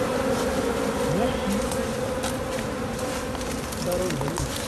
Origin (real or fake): real